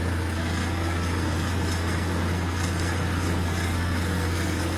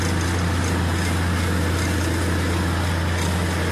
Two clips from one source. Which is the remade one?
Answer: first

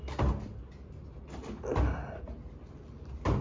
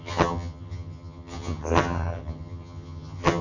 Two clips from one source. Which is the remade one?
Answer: second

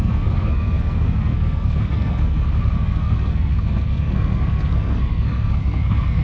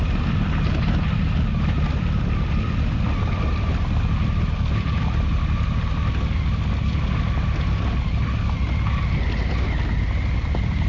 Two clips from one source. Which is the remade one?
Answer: first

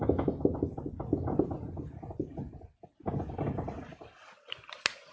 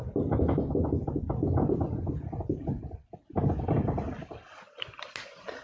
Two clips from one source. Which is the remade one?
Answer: second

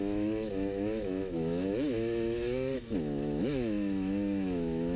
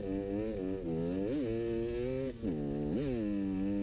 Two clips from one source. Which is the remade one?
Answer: first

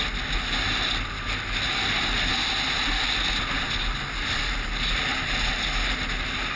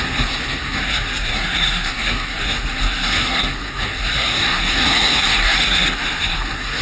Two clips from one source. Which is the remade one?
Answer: second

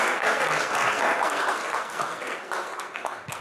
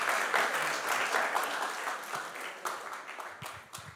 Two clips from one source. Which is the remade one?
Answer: first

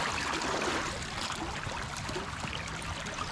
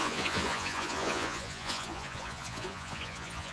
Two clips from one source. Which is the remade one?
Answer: second